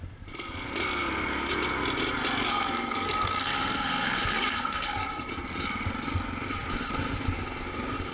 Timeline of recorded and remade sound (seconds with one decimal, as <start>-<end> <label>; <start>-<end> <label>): 0.0-2.5 recorded; 2.5-5.3 remade; 5.3-8.1 recorded